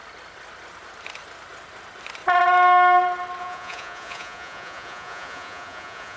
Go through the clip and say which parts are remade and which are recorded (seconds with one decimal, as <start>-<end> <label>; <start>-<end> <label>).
0.0-3.4 recorded; 3.4-6.2 remade

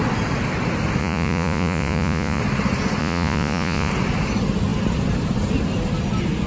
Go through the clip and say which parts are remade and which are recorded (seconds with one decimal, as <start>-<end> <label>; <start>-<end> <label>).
0.0-1.0 recorded; 1.0-2.4 remade; 2.4-3.0 recorded; 3.0-3.9 remade; 3.9-6.5 recorded

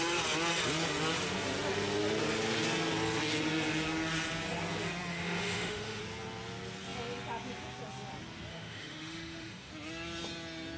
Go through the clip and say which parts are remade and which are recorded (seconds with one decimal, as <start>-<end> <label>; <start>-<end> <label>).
0.0-5.1 recorded; 5.1-6.0 remade; 6.0-8.5 recorded; 8.5-9.7 remade; 9.7-10.8 recorded

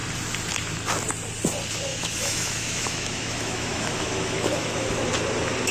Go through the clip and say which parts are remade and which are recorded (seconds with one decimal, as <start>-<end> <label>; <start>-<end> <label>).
0.0-1.9 recorded; 1.9-4.9 remade; 4.9-5.7 recorded

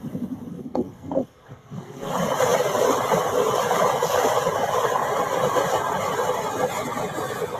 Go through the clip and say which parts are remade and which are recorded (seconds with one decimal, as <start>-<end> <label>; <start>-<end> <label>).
0.0-0.5 recorded; 0.5-2.1 remade; 2.1-7.6 recorded